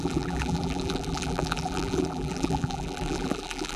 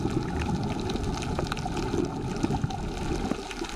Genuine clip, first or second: second